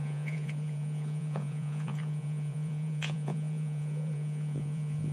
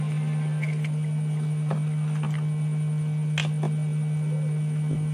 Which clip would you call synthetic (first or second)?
first